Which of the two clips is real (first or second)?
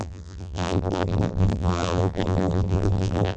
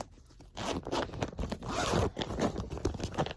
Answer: second